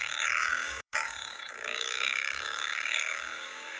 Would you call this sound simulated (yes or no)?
yes